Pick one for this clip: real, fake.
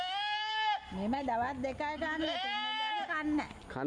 real